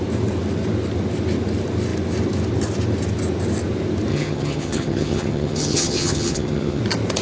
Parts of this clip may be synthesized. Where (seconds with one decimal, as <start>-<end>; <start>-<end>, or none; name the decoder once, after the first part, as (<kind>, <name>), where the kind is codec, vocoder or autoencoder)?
4.1-6.8 (vocoder, HiFi-GAN)